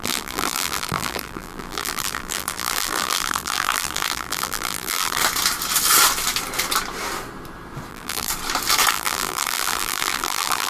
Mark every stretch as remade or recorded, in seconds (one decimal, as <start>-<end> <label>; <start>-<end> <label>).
0.0-5.2 remade; 5.2-7.9 recorded; 7.9-8.3 remade; 8.3-8.9 recorded; 8.9-10.7 remade